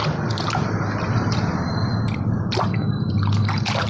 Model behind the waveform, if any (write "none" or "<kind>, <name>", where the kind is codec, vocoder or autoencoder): none